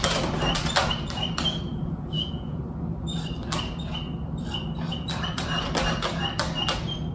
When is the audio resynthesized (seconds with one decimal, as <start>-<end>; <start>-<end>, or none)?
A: 1.7-2.6